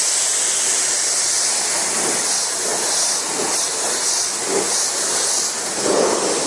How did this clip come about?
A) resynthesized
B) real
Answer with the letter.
B